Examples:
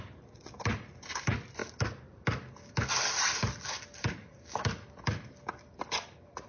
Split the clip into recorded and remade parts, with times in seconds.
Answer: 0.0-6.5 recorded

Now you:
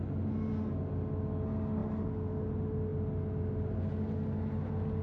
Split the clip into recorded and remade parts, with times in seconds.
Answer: 0.0-5.0 recorded

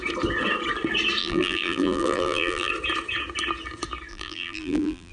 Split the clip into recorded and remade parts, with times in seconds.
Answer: 0.0-1.2 recorded; 1.2-2.7 remade; 2.7-4.1 recorded; 4.1-5.1 remade

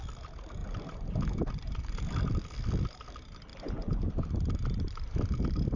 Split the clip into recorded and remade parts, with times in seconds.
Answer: 0.0-0.6 recorded; 0.6-1.5 remade; 1.5-5.8 recorded

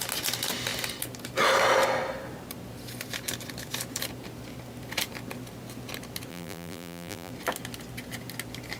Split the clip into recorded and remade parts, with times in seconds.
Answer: 0.0-6.3 recorded; 6.3-7.3 remade; 7.3-8.8 recorded

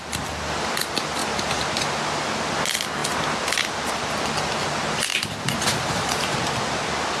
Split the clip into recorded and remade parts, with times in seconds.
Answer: 0.0-7.2 recorded